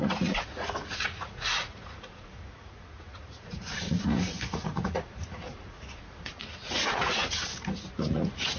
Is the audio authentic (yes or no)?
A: no